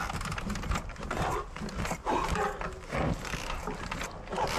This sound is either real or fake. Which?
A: real